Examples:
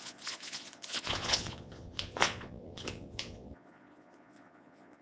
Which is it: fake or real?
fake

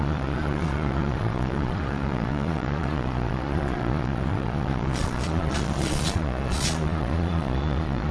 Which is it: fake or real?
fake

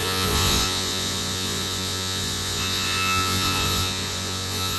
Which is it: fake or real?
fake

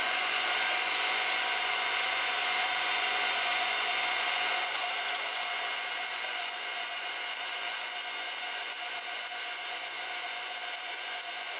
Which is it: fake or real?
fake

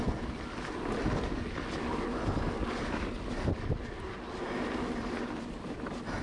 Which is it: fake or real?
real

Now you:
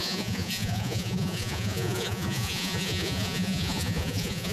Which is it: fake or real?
fake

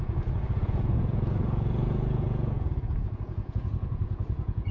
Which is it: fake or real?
fake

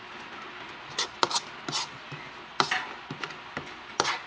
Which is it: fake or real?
real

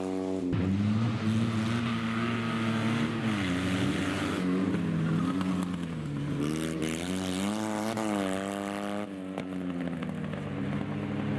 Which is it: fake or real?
real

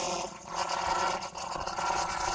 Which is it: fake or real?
fake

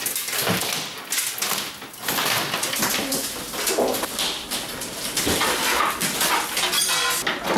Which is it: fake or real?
real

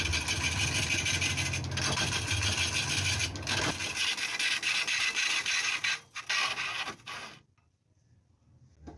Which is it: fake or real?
real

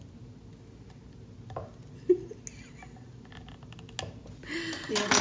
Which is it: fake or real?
real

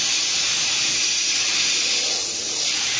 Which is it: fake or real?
real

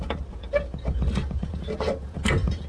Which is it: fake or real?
real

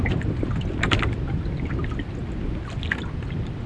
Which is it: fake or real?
real